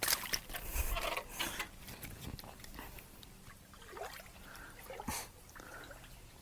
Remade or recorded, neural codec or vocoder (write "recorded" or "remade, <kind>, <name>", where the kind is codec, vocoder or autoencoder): recorded